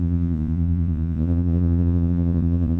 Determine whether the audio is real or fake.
fake